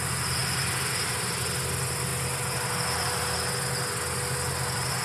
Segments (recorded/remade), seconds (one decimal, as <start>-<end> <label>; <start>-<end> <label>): 0.0-5.0 recorded